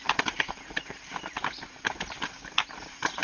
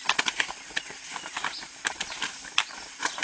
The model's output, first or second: first